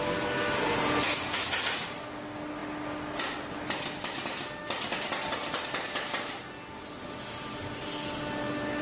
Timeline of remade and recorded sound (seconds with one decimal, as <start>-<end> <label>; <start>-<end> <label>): 0.0-8.8 recorded